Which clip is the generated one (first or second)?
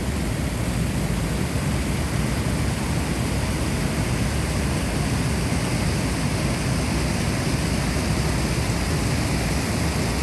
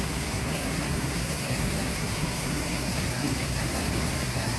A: second